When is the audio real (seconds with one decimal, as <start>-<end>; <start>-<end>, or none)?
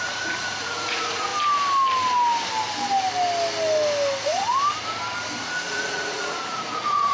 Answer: 1.3-5.4